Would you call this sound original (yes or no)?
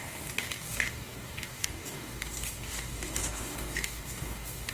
no